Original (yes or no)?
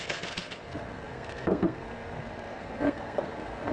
no